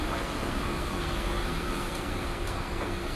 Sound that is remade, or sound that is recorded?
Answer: remade